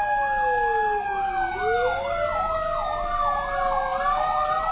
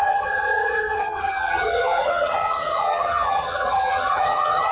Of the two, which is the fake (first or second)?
second